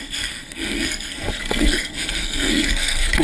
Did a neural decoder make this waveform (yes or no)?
yes